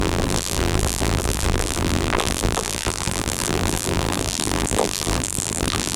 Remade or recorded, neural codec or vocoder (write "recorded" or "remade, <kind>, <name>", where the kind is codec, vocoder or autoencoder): remade, vocoder, BigVGAN v2